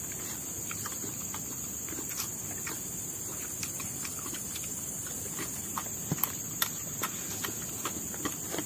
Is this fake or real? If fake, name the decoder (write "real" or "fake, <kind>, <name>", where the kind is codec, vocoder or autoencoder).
real